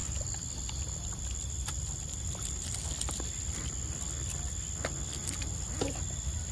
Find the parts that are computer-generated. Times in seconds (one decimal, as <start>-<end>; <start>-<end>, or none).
none